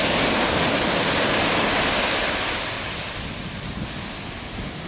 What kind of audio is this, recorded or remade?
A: recorded